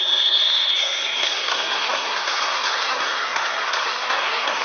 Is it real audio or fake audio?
fake